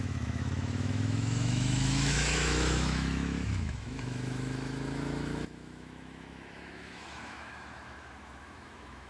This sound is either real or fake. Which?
fake